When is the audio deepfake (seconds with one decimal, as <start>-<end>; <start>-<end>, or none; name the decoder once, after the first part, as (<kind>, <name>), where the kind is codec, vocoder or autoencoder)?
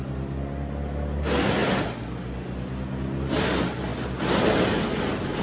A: none